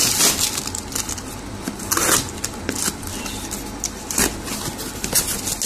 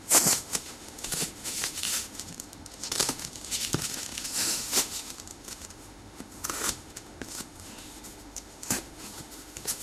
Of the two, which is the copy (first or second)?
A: second